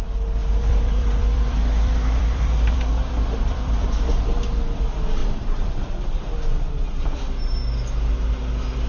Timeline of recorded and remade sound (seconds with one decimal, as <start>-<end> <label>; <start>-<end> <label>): 0.0-0.4 recorded; 0.4-4.1 remade; 4.1-5.2 recorded; 5.2-6.3 remade; 6.3-8.9 recorded